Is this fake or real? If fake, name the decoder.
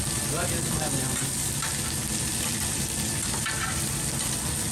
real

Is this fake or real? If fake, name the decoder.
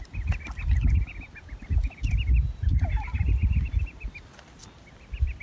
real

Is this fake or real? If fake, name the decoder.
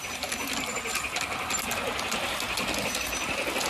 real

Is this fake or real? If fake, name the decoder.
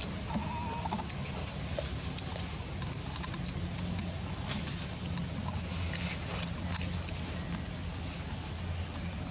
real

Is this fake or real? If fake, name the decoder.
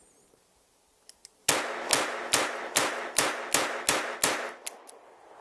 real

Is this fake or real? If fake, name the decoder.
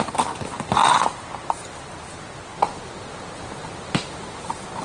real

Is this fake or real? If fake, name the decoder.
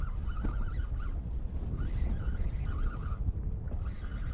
real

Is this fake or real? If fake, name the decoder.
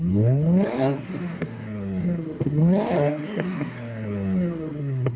fake, codec, SNAC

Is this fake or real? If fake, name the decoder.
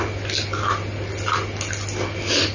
real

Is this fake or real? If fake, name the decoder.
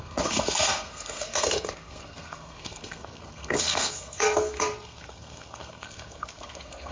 fake, codec, SNAC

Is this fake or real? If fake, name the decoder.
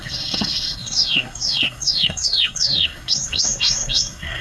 fake, codec, SNAC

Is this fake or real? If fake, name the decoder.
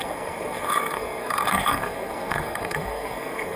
fake, codec, SNAC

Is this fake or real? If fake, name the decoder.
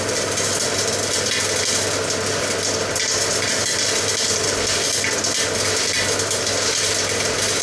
real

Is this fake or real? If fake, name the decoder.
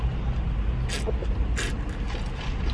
real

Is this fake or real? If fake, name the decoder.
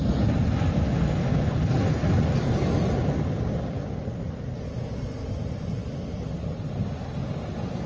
real